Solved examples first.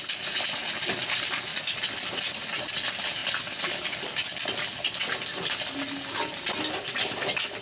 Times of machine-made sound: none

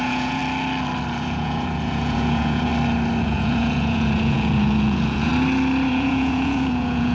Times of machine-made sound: 0.0-0.4; 1.2-2.7; 3.2-5.3; 5.9-7.1

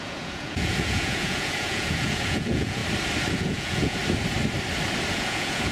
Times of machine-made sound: 0.0-2.8; 3.4-4.0; 5.1-5.7